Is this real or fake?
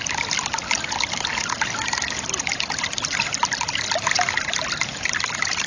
real